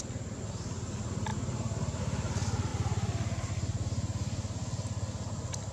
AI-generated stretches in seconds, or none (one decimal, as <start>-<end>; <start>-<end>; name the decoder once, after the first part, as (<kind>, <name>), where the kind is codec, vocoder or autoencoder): 1.3-2.0 (vocoder, BigVGAN v2); 2.7-3.5